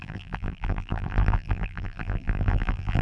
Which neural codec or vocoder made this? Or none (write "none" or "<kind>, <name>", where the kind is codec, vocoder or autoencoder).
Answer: vocoder, BigVGAN v2